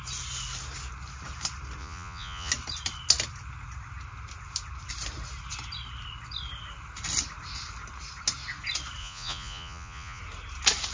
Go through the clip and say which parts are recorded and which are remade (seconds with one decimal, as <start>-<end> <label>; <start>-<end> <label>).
0.0-1.8 recorded; 1.8-2.5 remade; 2.5-9.0 recorded; 9.0-10.2 remade; 10.2-10.9 recorded